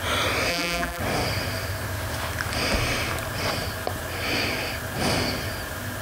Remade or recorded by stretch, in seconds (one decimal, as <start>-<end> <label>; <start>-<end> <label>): 0.0-0.5 recorded; 0.5-1.0 remade; 1.0-6.0 recorded

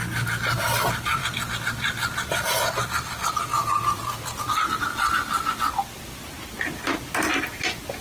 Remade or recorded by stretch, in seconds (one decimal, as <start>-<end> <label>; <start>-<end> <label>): 0.0-3.5 recorded; 3.5-5.6 remade; 5.6-8.0 recorded

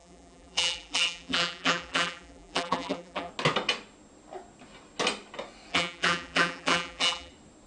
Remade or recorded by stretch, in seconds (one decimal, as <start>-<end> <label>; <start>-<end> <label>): 0.0-3.3 remade; 3.3-5.7 recorded; 5.7-7.3 remade; 7.3-7.7 recorded

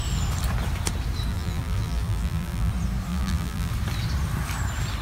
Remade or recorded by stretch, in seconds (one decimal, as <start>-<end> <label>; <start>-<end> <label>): 0.0-1.3 recorded; 1.3-2.7 remade; 2.7-3.1 recorded; 3.1-3.7 remade; 3.7-5.0 recorded

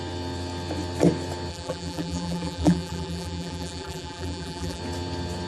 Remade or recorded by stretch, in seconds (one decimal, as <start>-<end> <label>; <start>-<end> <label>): 0.0-1.5 recorded; 1.5-4.8 remade; 4.8-5.5 recorded

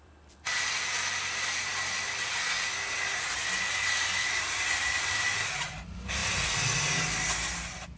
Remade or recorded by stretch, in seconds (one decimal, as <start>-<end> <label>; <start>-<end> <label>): 0.0-1.7 remade; 1.7-4.2 recorded; 4.2-6.2 remade; 6.2-8.0 recorded

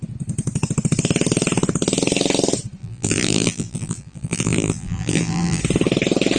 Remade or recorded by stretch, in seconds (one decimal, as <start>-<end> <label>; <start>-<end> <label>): 0.0-2.8 recorded; 2.8-5.6 remade; 5.6-6.4 recorded